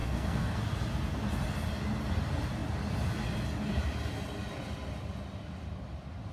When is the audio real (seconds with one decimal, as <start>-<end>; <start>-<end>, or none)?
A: 0.6-6.3